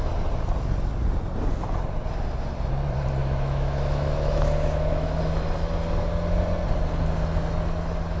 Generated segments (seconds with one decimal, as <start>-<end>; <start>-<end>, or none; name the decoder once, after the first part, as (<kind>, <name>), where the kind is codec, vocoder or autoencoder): 3.2-5.2 (autoencoder, DAC-VAE)